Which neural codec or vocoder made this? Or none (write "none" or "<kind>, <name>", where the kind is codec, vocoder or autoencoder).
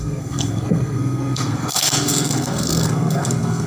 codec, SNAC